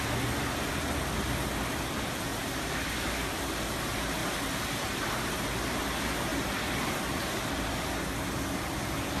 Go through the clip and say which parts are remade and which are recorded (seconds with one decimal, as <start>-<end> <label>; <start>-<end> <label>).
0.0-2.3 recorded; 2.3-3.5 remade; 3.5-6.3 recorded; 6.3-6.9 remade; 6.9-9.2 recorded